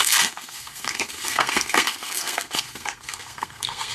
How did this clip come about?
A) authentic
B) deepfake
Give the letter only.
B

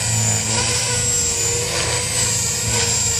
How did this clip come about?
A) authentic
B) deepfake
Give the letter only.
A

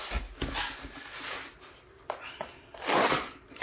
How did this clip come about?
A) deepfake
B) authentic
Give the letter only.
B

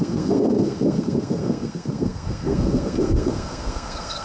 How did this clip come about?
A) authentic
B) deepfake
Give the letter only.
B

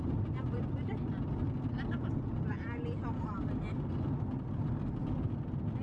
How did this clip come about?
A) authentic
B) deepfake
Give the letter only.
A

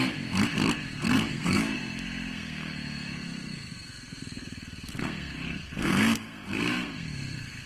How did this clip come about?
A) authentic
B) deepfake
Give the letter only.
B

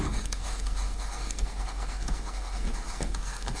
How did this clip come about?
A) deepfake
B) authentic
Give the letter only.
A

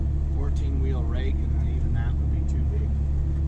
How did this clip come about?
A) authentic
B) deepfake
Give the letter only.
A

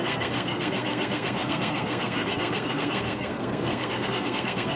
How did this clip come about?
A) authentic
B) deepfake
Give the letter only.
B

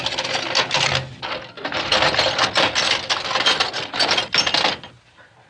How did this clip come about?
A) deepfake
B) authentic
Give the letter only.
B